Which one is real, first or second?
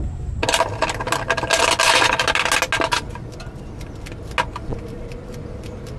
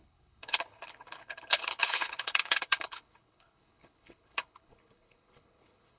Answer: first